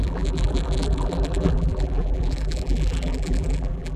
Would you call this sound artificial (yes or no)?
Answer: yes